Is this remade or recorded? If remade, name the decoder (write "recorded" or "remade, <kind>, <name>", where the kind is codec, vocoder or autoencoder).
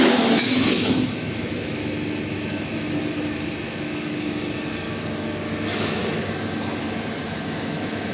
remade, autoencoder, DAC-VAE